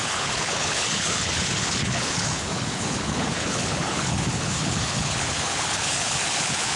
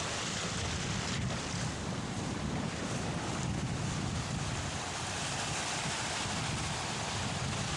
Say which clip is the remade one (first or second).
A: first